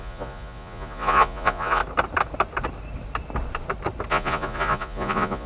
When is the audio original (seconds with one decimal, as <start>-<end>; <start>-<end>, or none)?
1.8-4.1